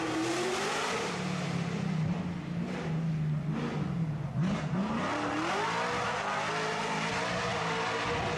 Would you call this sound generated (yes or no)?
no